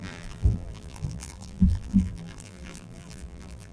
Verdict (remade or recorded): remade